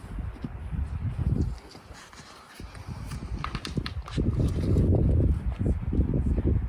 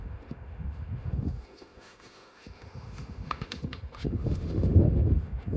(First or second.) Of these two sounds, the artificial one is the second